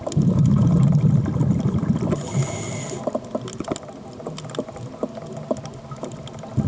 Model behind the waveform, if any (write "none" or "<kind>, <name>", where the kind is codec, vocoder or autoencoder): none